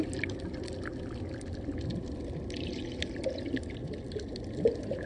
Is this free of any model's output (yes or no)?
yes